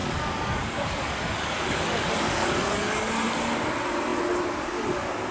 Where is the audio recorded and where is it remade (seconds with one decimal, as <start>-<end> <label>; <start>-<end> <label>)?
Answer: 0.0-3.1 remade; 3.1-5.3 recorded